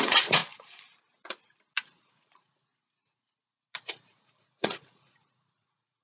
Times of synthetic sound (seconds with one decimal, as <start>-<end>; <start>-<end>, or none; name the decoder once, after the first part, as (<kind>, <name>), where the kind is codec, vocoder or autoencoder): 0.0-0.4 (vocoder, Vocos); 1.8-2.7; 4.1-6.0